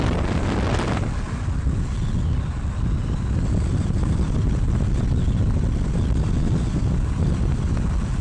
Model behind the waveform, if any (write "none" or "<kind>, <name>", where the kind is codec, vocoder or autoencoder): none